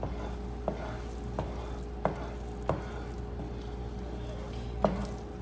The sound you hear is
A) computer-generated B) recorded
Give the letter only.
B